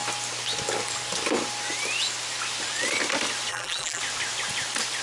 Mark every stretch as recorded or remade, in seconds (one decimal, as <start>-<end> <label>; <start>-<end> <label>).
0.0-3.5 recorded; 3.5-4.0 remade; 4.0-5.0 recorded